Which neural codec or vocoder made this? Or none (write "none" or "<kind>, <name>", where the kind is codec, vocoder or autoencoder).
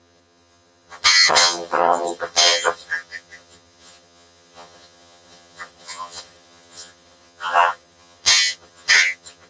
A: vocoder, HiFi-GAN